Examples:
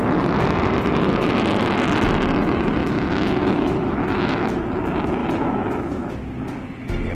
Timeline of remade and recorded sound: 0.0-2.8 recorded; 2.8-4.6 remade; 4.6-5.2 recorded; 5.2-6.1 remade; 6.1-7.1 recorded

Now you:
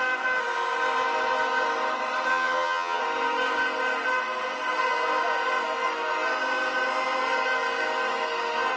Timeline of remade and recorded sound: 0.0-2.3 recorded; 2.3-3.0 remade; 3.0-8.8 recorded

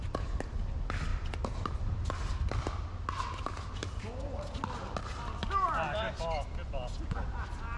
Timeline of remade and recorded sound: 0.0-7.8 recorded

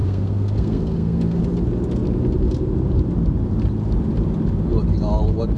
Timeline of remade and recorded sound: 0.0-1.4 remade; 1.4-5.6 recorded